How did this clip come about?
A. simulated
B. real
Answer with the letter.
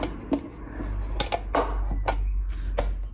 B